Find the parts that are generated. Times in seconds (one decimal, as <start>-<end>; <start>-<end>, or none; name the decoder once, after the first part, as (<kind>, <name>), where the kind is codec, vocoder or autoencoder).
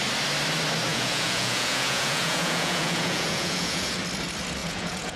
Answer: 0.9-4.0 (vocoder, Vocos); 4.6-5.2